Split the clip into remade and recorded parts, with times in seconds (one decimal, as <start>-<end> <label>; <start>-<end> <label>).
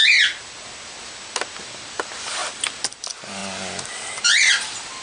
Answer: 0.0-1.6 recorded; 1.6-2.4 remade; 2.4-3.0 recorded; 3.0-3.4 remade; 3.4-4.2 recorded; 4.2-5.0 remade